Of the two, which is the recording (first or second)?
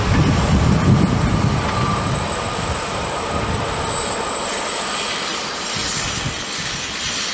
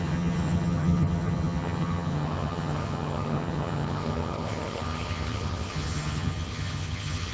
first